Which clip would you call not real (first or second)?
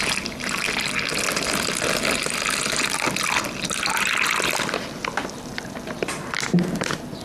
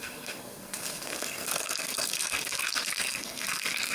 second